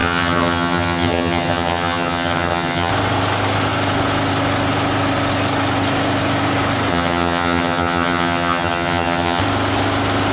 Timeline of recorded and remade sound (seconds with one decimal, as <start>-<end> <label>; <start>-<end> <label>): 0.0-2.9 remade; 2.9-6.9 recorded; 6.9-9.4 remade; 9.4-10.3 recorded